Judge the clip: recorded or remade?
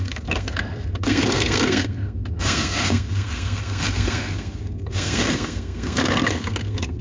remade